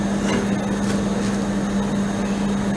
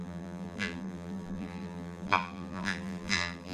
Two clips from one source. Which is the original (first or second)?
first